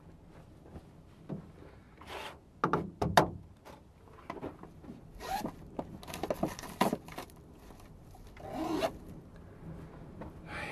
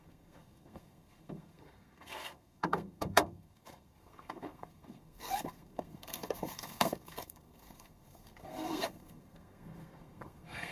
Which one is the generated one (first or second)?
second